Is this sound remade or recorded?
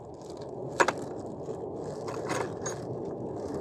recorded